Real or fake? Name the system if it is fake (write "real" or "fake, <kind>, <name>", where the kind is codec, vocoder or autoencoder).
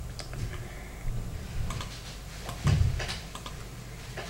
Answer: real